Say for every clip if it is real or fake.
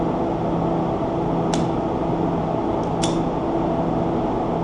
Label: real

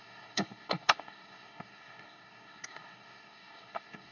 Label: fake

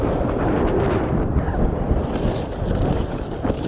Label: real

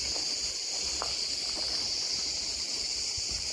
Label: real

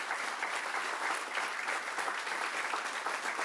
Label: real